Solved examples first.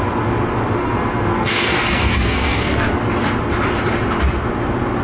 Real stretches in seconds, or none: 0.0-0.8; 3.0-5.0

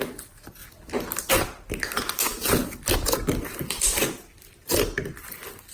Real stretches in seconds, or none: 0.0-5.7